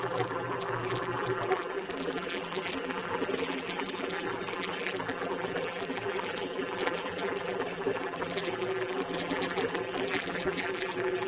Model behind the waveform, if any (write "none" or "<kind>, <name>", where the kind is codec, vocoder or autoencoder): vocoder, BigVGAN v2